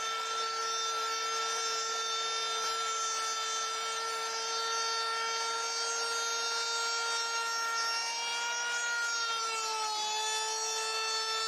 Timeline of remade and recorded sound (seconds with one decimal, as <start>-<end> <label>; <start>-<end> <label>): 0.0-11.5 recorded